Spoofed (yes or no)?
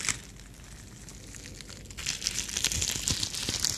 no